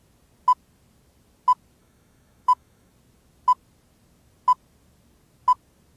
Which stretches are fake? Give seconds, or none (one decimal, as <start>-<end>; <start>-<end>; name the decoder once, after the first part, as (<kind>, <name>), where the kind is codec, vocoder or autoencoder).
1.8-2.9 (autoencoder, DAC-VAE)